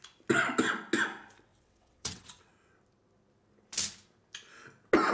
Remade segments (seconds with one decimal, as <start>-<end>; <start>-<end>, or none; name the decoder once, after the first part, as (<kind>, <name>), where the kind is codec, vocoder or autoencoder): 1.5-2.5 (vocoder, WaveNeXt)